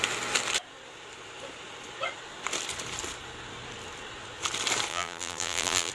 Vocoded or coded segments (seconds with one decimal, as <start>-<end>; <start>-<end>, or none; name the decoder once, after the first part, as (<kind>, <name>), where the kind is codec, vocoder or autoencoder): 4.9-5.9 (vocoder, BigVGAN v2)